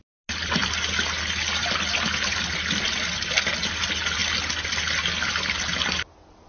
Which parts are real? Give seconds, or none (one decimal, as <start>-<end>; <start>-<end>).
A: 0.0-6.5